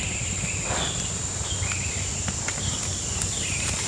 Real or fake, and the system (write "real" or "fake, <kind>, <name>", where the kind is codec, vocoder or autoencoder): real